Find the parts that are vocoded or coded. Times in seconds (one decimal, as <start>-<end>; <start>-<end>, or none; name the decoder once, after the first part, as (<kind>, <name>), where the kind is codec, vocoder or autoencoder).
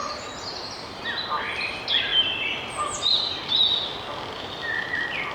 0.0-1.0 (vocoder, BigVGAN v2)